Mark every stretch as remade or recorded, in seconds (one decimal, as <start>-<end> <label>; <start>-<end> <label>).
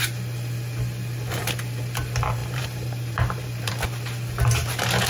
0.0-2.4 recorded; 2.4-3.7 remade; 3.7-5.1 recorded